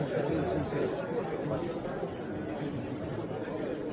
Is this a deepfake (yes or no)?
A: yes